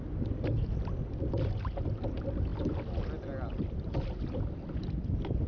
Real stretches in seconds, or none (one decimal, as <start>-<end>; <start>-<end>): 0.0-5.5